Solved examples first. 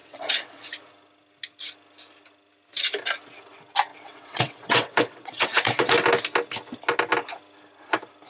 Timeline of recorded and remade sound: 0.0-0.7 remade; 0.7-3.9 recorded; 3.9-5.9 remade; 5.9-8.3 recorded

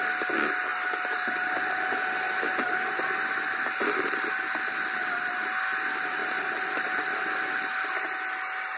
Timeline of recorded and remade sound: 0.0-8.8 recorded

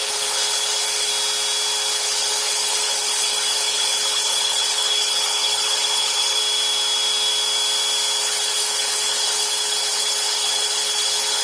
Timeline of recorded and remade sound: 0.0-1.1 remade; 1.1-1.9 recorded; 1.9-6.4 remade; 6.4-8.2 recorded; 8.2-11.4 remade

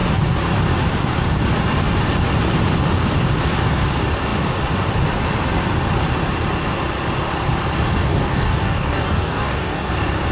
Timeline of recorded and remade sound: 0.0-8.0 recorded; 8.0-9.9 remade; 9.9-10.3 recorded

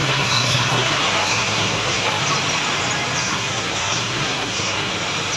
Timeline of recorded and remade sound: 0.0-2.2 remade; 2.2-3.2 recorded; 3.2-4.9 remade; 4.9-5.4 recorded